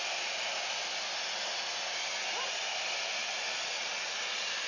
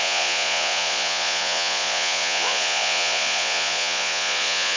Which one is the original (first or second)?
first